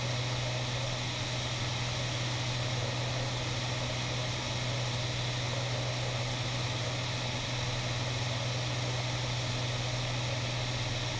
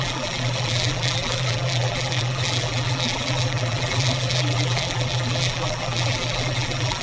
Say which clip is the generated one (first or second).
second